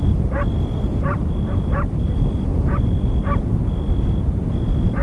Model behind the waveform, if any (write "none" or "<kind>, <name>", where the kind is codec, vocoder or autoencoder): none